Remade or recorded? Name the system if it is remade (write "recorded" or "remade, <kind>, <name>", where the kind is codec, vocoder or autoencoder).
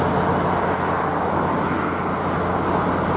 recorded